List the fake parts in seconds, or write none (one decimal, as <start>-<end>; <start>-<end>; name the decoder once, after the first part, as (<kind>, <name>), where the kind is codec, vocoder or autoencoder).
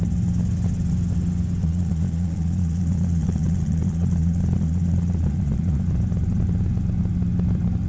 1.6-5.9 (vocoder, Vocos)